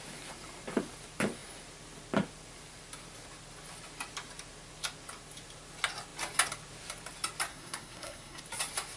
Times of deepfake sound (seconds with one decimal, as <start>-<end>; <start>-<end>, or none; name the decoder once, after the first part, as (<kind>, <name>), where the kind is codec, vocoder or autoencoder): 7.5-8.4 (codec, SNAC)

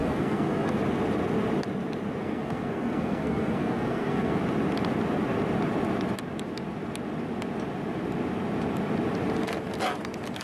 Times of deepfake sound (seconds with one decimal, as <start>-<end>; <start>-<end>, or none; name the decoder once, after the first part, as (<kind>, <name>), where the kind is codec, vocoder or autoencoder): 0.0-0.8 (codec, SNAC); 2.2-4.4

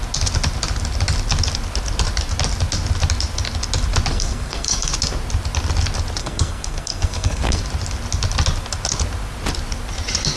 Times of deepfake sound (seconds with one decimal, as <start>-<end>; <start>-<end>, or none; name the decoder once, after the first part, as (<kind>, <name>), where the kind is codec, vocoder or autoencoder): 4.1-4.9 (codec, SNAC); 6.2-7.6

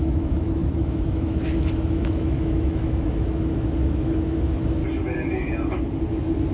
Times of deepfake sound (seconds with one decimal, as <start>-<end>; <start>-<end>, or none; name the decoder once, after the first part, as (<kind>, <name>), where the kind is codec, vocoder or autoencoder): 0.0-4.8 (autoencoder, DAC-VAE); 6.1-6.5

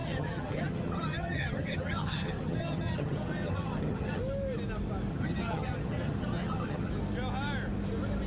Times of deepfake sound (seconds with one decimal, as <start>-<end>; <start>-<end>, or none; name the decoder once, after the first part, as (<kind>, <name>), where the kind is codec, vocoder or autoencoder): 0.0-4.2 (vocoder, HiFi-GAN); 5.1-6.9